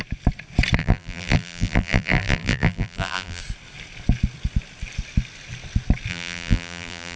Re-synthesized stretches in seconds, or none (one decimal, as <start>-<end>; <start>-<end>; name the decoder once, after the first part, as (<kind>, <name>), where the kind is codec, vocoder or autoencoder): 0.8-3.4 (vocoder, BigVGAN v2); 6.1-7.2